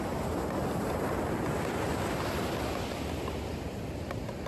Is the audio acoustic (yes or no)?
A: yes